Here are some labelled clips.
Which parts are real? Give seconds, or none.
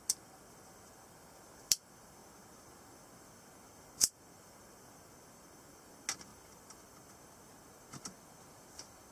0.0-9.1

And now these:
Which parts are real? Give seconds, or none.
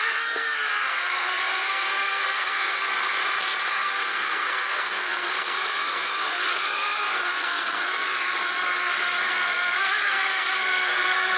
3.2-3.7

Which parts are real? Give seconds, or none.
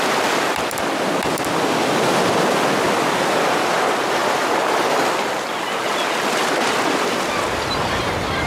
0.0-4.2; 5.0-8.5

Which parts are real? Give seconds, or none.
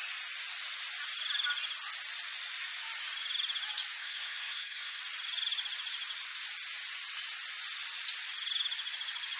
0.0-4.0; 5.0-9.4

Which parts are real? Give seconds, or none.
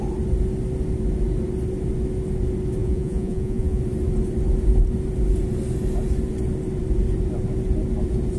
0.0-2.8; 3.8-8.4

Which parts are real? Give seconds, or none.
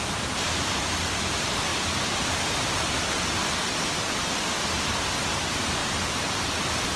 0.0-1.7; 2.8-7.0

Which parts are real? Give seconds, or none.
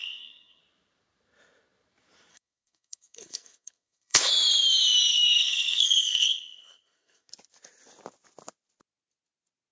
0.6-2.3; 4.3-5.1; 7.3-9.7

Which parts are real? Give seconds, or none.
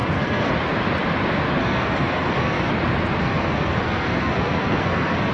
0.5-1.6; 2.7-3.2